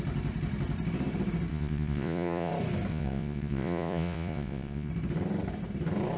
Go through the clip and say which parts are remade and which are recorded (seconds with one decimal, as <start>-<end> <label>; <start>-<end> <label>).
0.0-1.5 recorded; 1.5-2.5 remade; 2.5-2.9 recorded; 2.9-4.9 remade; 4.9-6.2 recorded